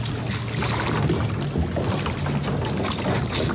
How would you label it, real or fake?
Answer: real